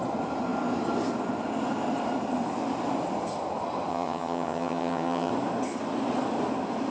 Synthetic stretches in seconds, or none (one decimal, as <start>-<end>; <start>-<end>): 3.9-5.3